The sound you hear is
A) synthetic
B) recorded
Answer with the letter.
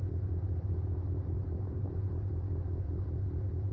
B